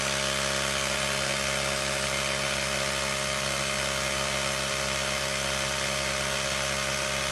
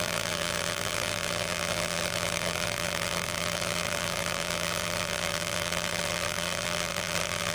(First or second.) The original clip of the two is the first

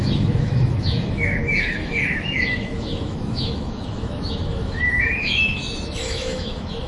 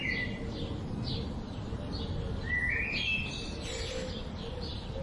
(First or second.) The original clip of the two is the second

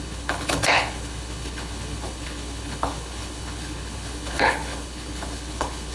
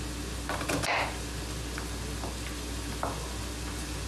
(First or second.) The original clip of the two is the second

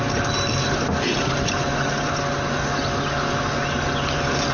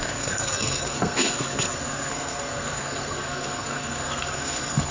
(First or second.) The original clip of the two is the first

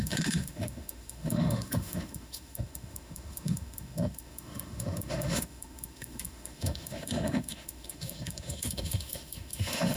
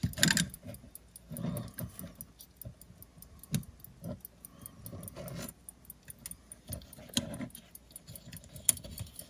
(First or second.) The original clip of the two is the second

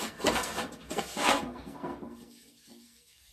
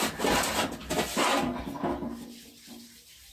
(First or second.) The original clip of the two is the second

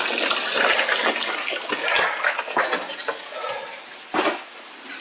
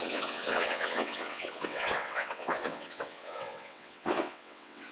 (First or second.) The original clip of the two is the first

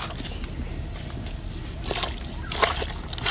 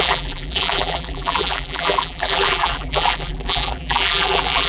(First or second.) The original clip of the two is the first